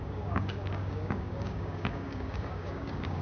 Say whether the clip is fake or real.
fake